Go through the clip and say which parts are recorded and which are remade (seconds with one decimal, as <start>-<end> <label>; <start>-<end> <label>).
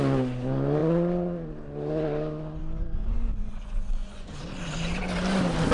0.0-3.3 recorded; 3.3-4.3 remade; 4.3-5.7 recorded